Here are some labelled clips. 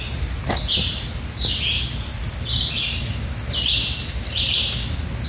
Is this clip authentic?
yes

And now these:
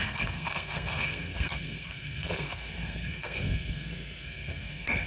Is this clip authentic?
no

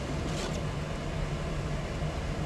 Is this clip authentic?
yes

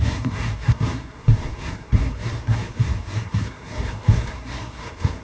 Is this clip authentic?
no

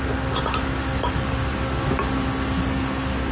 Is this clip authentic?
yes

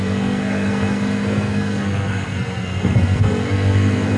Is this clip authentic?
no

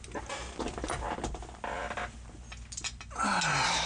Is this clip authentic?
yes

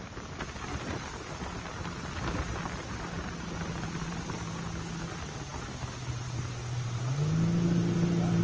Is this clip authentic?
yes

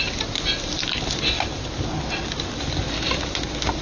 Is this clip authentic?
yes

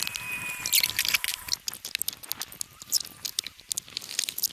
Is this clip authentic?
yes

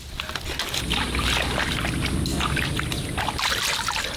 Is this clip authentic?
yes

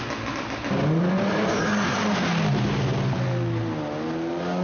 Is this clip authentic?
yes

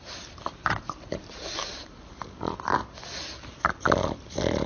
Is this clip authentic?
yes